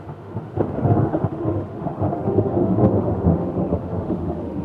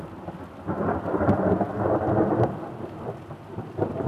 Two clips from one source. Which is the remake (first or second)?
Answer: first